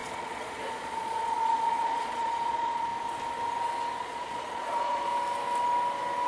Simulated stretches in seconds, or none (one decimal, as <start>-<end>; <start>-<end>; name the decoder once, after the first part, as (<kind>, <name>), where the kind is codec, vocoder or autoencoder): 0.0-2.9 (vocoder, Vocos); 4.0-5.1